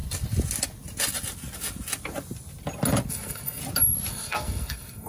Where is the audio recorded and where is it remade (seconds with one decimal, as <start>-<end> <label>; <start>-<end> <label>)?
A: 0.0-3.1 recorded; 3.1-3.6 remade; 3.6-4.1 recorded; 4.1-5.1 remade